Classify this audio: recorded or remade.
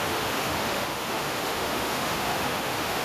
remade